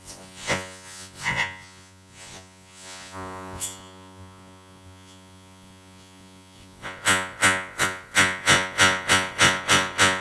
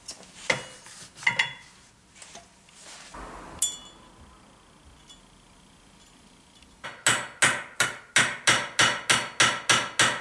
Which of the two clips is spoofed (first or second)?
first